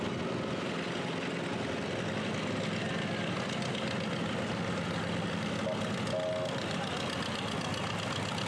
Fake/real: real